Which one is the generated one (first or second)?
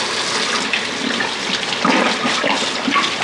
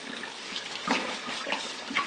second